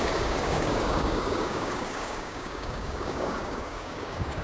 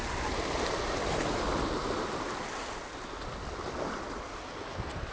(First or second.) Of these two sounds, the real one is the second